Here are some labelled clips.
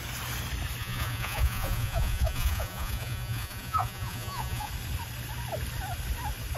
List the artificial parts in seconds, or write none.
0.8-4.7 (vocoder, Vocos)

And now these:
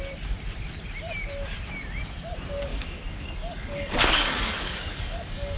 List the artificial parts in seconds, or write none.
2.7-5.6 (codec, DAC)

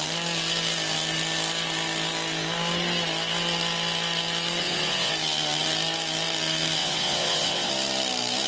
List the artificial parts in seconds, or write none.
4.6-5.1 (vocoder, WaveNeXt); 6.8-7.7

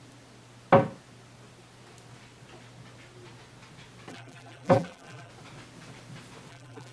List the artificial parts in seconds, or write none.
4.1-5.3 (vocoder, BigVGAN v2); 6.5-6.9

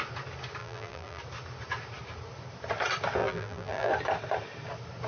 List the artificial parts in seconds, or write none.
0.6-1.2 (vocoder, BigVGAN v2); 3.2-3.9